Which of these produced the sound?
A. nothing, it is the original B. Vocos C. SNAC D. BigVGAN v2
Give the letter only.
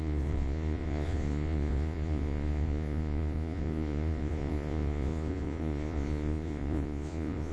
B